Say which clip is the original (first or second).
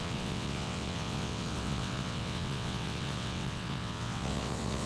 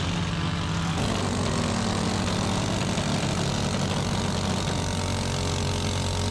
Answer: second